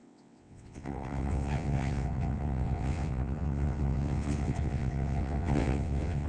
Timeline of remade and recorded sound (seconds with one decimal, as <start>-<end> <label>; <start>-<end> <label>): 0.0-6.3 remade